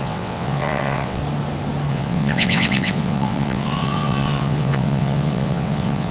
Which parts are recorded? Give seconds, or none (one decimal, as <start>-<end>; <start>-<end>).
1.2-1.9